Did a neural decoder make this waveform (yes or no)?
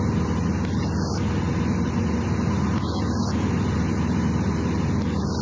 no